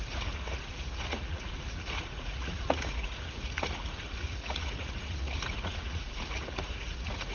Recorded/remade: remade